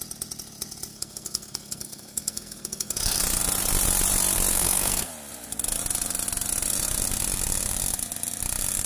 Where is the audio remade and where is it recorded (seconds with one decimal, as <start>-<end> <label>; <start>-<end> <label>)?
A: 0.0-0.9 recorded; 0.9-3.2 remade; 3.2-4.5 recorded; 4.5-5.1 remade; 5.1-8.9 recorded